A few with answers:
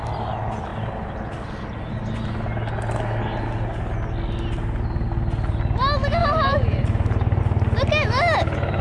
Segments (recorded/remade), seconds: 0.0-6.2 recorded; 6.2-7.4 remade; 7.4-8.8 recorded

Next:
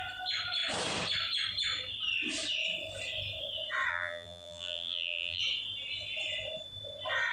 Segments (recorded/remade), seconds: 0.0-3.9 recorded; 3.9-5.4 remade; 5.4-7.3 recorded

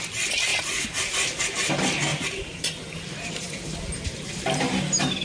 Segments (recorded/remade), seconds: 0.0-2.1 recorded; 2.1-2.9 remade; 2.9-5.2 recorded

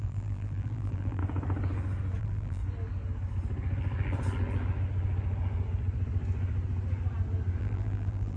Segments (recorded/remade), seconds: 0.0-1.2 remade; 1.2-2.2 recorded; 2.2-2.6 remade; 2.6-7.6 recorded; 7.6-8.4 remade

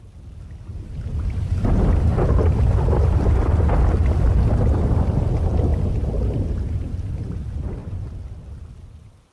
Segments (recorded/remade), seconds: 0.0-7.8 recorded; 7.8-8.7 remade; 8.7-9.3 recorded

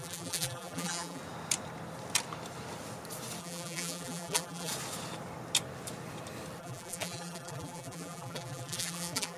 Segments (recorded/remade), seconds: 0.0-1.2 remade; 1.2-3.4 recorded; 3.4-4.7 remade; 4.7-6.6 recorded; 6.6-9.4 remade